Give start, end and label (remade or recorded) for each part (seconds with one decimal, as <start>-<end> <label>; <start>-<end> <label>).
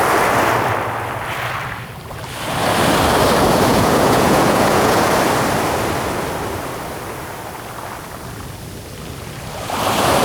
0.0-3.7 recorded; 3.7-5.1 remade; 5.1-10.2 recorded